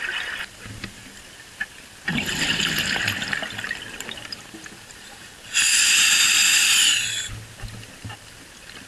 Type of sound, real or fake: real